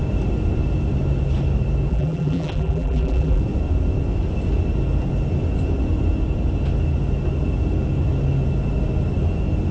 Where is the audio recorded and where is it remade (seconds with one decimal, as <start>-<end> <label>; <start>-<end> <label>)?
0.0-1.9 recorded; 1.9-3.4 remade; 3.4-9.7 recorded